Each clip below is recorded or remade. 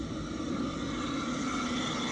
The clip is recorded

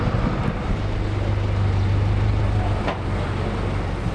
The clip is recorded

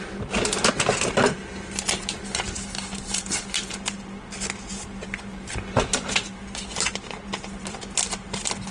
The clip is recorded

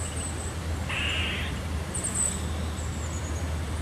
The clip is recorded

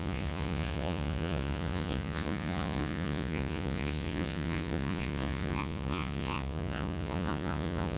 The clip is remade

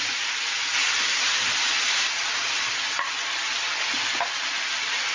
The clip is recorded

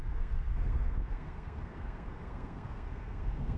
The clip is remade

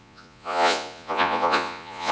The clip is remade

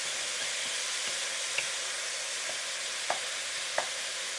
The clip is recorded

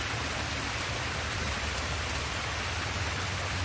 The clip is recorded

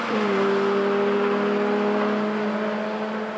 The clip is recorded